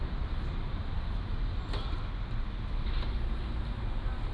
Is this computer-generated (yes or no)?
no